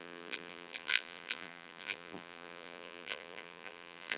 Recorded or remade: remade